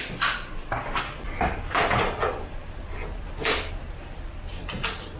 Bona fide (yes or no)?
yes